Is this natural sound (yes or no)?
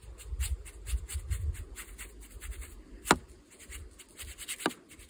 yes